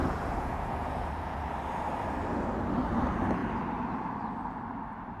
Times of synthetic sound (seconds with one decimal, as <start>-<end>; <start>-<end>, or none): 0.0-1.4